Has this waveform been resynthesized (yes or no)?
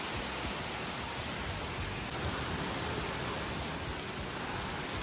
no